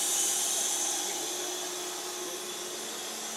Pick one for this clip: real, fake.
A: real